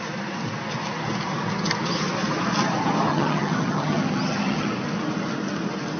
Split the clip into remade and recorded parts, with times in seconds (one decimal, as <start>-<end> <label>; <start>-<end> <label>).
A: 0.0-3.1 recorded; 3.1-4.7 remade; 4.7-6.0 recorded